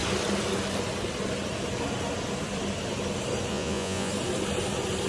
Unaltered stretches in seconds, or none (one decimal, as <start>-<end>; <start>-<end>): 0.0-3.5; 4.1-5.1

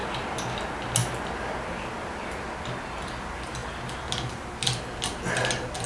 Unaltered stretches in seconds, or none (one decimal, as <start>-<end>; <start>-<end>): 0.0-5.9

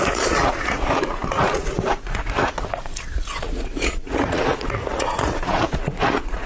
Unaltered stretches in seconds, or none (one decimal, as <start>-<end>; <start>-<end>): none

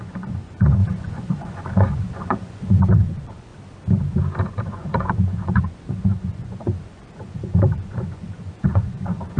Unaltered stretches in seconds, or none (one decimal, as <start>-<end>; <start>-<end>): 3.5-4.5

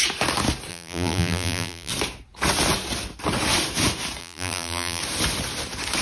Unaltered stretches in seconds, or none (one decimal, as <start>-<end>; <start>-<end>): 0.0-0.7; 1.9-4.2; 5.0-6.0

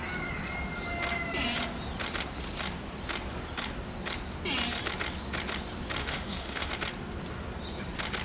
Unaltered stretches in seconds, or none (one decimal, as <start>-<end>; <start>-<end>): 0.0-6.0; 6.7-8.2